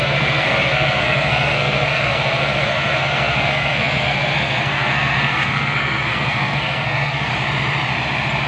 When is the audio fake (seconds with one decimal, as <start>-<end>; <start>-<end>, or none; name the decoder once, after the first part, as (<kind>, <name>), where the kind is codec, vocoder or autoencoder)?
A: 0.0-7.3 (codec, SNAC)